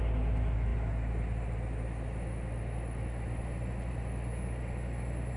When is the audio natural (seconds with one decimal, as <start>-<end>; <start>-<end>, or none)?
0.0-5.4